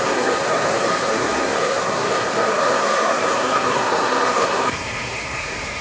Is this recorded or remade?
remade